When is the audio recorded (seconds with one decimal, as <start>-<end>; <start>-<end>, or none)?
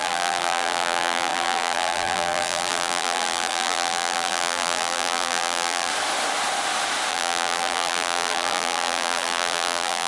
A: 5.9-7.1